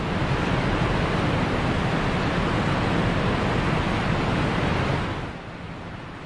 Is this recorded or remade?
recorded